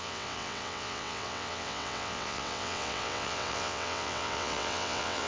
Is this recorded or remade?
remade